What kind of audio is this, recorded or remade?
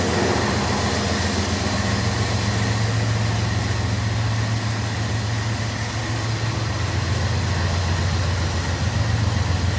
recorded